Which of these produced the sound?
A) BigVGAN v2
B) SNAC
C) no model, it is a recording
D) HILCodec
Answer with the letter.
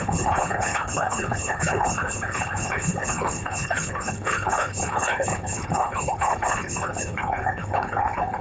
D